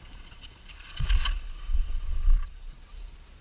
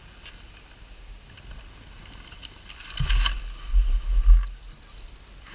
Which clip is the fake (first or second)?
first